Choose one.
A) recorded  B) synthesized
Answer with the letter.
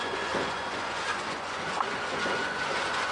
B